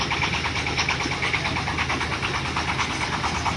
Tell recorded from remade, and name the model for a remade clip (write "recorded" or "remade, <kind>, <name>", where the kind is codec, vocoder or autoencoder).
recorded